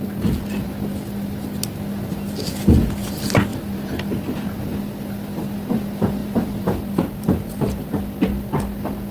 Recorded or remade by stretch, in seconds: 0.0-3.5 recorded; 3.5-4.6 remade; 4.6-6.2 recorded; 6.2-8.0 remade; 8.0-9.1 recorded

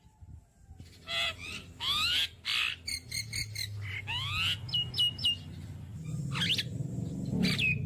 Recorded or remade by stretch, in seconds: 0.0-7.9 recorded

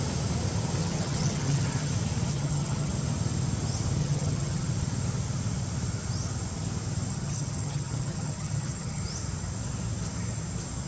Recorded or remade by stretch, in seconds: 0.0-0.8 recorded; 0.8-1.9 remade; 1.9-2.3 recorded; 2.3-2.9 remade; 2.9-4.0 recorded; 4.0-4.7 remade; 4.7-7.1 recorded; 7.1-9.0 remade; 9.0-10.9 recorded

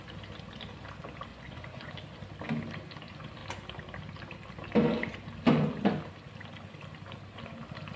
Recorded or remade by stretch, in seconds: 0.0-1.3 recorded; 1.3-1.9 remade; 1.9-8.0 recorded